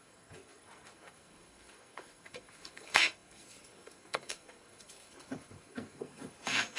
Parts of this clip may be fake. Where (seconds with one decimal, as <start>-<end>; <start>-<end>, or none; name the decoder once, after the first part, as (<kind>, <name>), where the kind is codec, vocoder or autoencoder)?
0.0-6.8 (codec, SNAC)

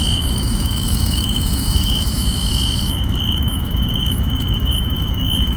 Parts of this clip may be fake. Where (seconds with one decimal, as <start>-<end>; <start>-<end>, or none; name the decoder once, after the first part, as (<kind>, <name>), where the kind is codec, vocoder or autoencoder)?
0.0-5.6 (autoencoder, DAC-VAE)

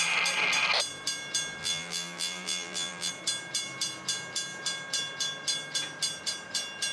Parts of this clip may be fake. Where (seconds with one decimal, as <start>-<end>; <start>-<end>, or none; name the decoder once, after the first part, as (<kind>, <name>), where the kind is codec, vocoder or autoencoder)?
1.6-3.1 (vocoder, BigVGAN v2)

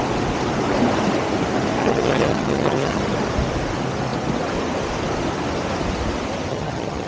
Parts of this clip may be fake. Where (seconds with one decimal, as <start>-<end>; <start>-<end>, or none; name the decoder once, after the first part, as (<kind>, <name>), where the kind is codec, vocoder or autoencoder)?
1.8-3.0 (vocoder, HiFi-GAN); 6.5-7.1

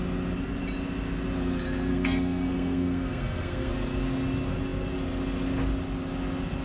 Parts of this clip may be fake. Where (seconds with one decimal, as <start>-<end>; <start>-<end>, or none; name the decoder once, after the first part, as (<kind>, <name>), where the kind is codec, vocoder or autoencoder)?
1.9-3.7 (codec, SNAC)

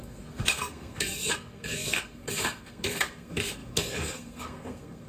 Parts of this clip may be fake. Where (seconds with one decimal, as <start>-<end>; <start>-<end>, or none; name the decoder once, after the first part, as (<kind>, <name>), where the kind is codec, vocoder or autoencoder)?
0.0-5.1 (codec, SNAC)

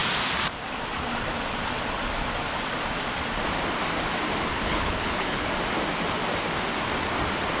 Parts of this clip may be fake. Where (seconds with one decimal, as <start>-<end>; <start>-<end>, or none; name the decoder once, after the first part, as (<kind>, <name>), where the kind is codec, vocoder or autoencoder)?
4.5-5.5 (codec, HILCodec)

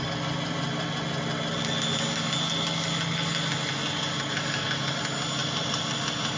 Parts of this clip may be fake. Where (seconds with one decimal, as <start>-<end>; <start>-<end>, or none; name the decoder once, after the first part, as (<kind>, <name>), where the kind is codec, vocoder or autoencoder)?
none